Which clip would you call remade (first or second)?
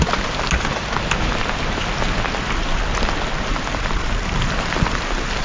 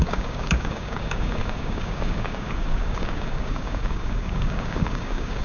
second